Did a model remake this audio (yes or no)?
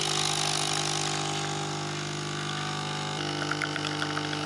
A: no